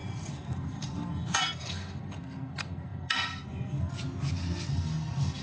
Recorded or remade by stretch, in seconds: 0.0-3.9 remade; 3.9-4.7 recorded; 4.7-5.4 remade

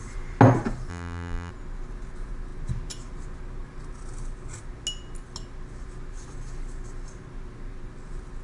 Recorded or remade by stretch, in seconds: 0.0-0.9 recorded; 0.9-1.5 remade; 1.5-8.4 recorded

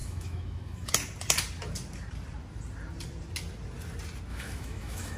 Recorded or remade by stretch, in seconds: 0.0-0.9 remade; 0.9-4.3 recorded; 4.3-5.2 remade